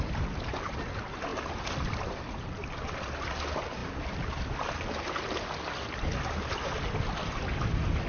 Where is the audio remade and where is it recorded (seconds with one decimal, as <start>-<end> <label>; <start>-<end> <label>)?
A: 0.0-8.1 recorded